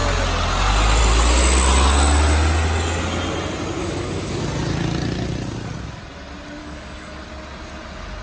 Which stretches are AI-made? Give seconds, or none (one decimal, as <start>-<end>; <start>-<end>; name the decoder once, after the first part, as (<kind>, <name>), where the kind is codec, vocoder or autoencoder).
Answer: 3.8-4.4 (codec, DAC); 6.6-7.2